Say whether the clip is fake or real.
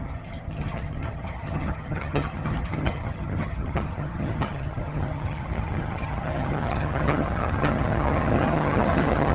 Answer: fake